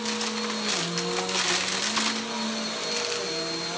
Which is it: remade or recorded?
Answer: recorded